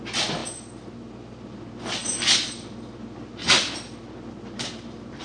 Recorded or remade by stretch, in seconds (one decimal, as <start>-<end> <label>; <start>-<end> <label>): 0.0-5.2 recorded